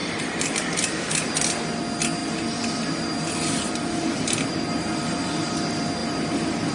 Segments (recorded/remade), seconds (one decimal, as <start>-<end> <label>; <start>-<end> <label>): 0.0-1.3 remade; 1.3-2.2 recorded; 2.2-5.5 remade; 5.5-6.0 recorded; 6.0-6.7 remade